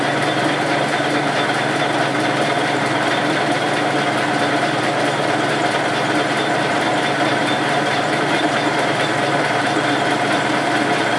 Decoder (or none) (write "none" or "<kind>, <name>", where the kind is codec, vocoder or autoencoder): vocoder, BigVGAN v2